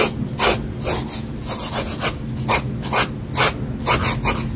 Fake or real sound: real